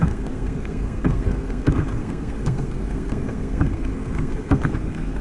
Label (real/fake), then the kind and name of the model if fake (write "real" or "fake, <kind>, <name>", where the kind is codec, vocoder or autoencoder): fake, codec, SNAC